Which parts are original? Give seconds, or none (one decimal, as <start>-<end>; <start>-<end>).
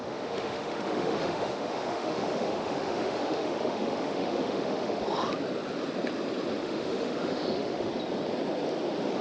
5.0-6.6; 7.9-9.2